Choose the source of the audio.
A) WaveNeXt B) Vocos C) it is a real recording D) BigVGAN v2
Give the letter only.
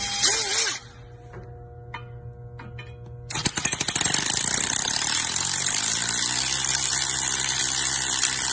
C